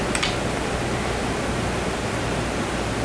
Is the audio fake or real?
real